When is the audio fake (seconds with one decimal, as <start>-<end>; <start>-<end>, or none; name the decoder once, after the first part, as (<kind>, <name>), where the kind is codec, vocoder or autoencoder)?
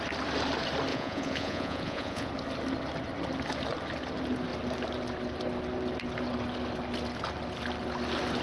0.9-2.3 (vocoder, Vocos)